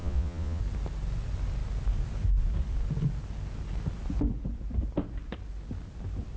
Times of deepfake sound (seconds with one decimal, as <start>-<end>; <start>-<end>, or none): 0.0-0.6